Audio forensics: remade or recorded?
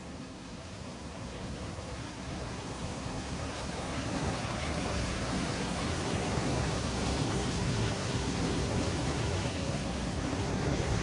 remade